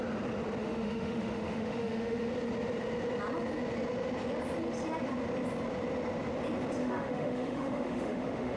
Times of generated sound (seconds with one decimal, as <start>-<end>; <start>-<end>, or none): 0.6-2.3; 6.8-8.6